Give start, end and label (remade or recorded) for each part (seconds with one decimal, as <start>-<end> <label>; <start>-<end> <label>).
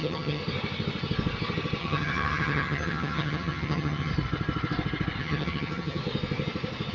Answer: 0.0-0.4 remade; 0.4-1.8 recorded; 1.8-4.1 remade; 4.1-5.2 recorded; 5.2-6.0 remade; 6.0-6.9 recorded